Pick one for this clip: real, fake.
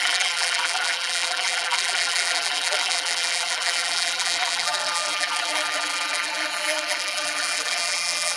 fake